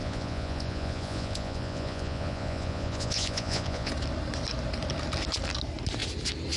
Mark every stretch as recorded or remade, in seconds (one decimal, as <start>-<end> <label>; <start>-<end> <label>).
0.0-3.9 remade; 3.9-6.6 recorded